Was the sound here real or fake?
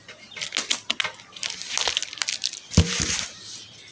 real